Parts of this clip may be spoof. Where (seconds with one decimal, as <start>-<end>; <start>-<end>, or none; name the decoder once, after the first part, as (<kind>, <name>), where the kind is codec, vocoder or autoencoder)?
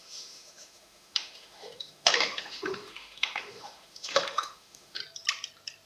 0.0-5.0 (autoencoder, DAC-VAE)